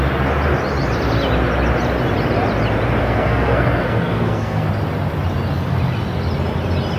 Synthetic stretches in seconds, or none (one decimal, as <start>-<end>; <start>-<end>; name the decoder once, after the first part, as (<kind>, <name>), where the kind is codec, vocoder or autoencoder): 3.0-4.7 (codec, SNAC)